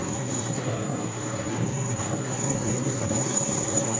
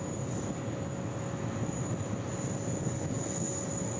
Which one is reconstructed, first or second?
first